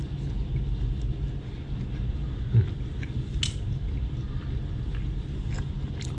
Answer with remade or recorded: recorded